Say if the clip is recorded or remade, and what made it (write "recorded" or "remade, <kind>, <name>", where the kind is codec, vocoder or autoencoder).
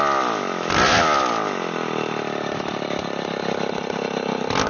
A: recorded